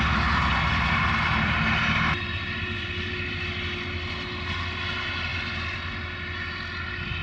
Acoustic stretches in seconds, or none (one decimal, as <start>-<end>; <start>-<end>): 0.0-7.2